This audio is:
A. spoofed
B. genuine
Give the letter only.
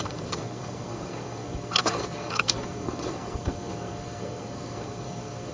A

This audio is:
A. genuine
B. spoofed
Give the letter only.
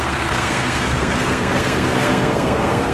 B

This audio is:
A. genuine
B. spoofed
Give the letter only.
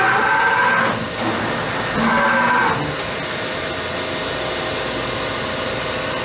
A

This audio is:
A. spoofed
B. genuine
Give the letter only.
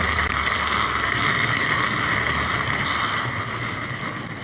B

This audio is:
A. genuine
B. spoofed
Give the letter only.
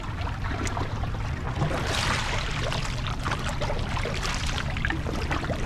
A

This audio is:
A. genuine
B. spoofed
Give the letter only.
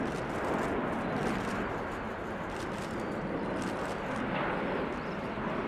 A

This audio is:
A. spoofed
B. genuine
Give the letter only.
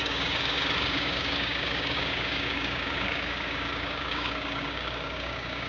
A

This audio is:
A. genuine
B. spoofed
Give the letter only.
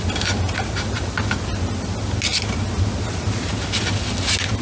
A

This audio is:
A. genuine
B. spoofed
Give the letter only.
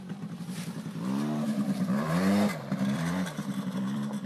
B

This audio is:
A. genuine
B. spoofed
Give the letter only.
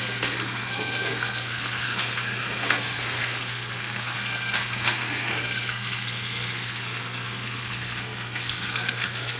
B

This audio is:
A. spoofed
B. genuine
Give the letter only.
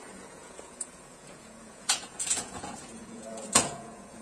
A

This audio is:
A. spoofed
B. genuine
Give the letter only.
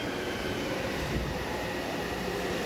B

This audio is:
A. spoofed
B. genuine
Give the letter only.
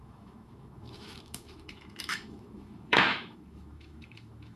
A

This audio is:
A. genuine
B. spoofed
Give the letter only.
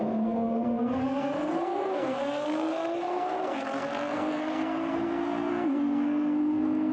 B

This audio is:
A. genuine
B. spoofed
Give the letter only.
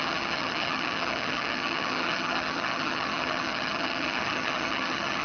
B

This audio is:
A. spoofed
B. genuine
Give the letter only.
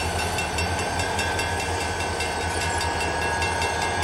B